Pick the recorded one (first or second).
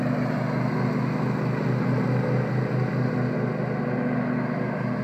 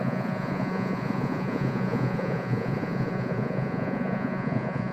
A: first